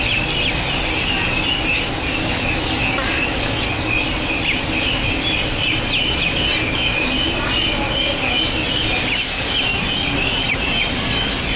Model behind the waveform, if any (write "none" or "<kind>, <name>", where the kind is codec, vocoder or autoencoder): none